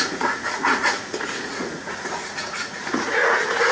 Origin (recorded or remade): remade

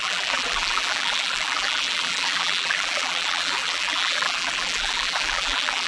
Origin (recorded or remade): remade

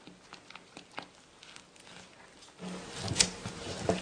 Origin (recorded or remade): recorded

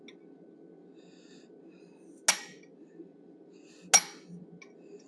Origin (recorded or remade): recorded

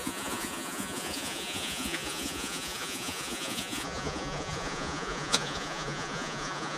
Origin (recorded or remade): remade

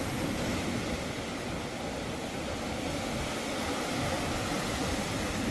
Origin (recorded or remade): recorded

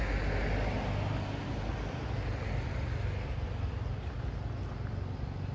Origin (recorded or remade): recorded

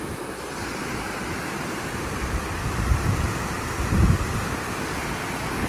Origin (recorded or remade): recorded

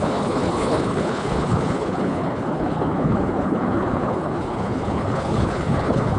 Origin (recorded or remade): remade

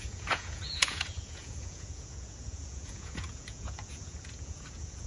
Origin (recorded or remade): remade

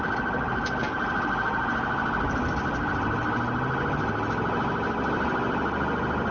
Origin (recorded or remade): recorded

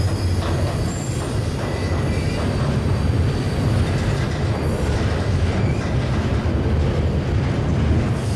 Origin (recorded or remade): recorded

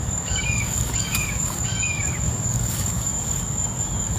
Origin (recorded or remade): remade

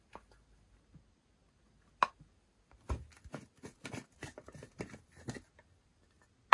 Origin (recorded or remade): recorded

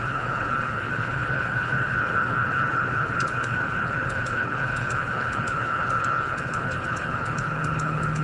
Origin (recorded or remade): remade